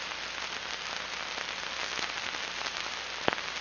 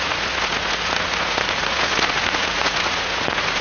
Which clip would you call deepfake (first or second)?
second